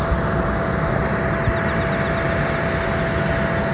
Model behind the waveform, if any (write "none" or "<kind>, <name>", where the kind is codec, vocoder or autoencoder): none